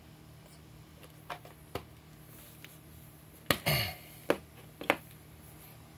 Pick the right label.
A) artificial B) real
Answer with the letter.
B